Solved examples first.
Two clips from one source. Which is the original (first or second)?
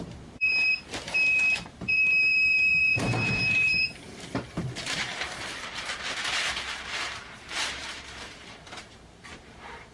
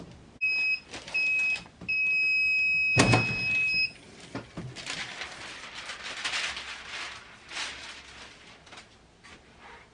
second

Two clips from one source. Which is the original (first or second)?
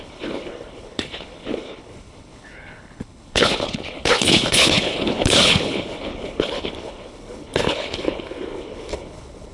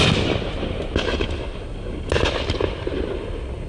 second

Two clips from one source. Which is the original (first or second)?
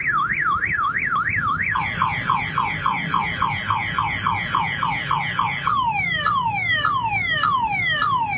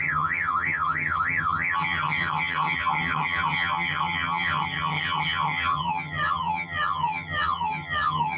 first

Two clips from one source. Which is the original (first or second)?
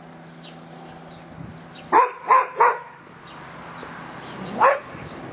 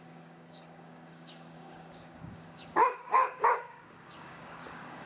first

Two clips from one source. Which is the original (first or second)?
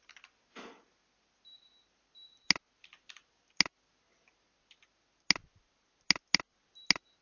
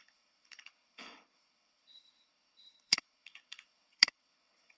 first